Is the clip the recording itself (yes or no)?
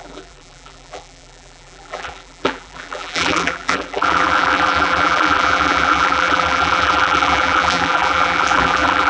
no